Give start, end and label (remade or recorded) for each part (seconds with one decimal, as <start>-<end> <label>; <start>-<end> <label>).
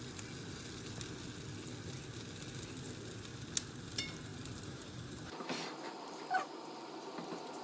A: 0.0-4.3 recorded; 4.3-6.8 remade; 6.8-7.6 recorded